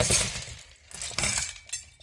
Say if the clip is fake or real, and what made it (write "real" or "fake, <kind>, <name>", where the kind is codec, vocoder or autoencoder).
real